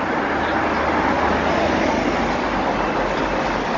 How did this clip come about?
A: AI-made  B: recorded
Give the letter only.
B